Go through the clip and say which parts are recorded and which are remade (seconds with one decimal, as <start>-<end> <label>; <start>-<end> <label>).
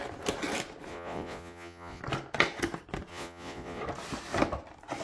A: 0.0-0.9 recorded; 0.9-2.0 remade; 2.0-3.1 recorded; 3.1-3.8 remade; 3.8-5.0 recorded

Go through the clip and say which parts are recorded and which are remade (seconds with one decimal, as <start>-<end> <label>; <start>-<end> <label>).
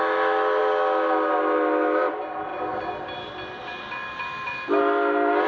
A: 0.0-5.5 recorded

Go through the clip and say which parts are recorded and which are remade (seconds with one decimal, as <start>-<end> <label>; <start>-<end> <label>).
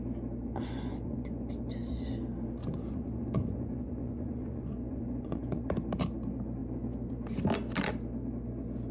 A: 0.0-0.5 recorded; 0.5-1.5 remade; 1.5-2.6 recorded; 2.6-5.6 remade; 5.6-8.9 recorded